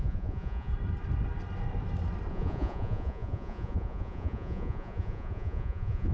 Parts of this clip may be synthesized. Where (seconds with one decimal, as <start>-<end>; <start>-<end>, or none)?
0.0-0.7; 2.3-6.1